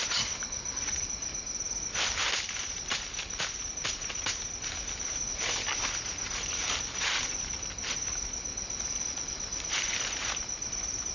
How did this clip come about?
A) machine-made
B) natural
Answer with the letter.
B